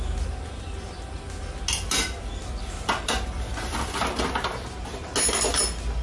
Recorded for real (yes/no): yes